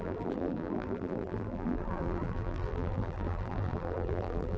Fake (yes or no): yes